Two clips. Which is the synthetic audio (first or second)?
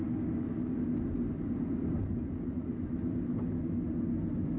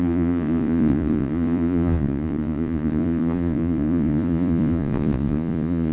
second